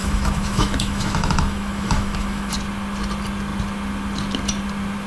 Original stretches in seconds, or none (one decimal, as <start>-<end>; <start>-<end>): 2.5-5.1